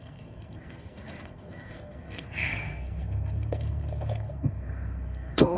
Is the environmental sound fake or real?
fake